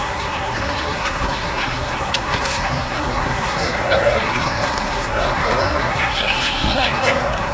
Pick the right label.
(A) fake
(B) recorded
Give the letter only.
A